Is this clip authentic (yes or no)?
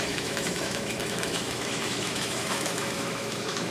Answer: no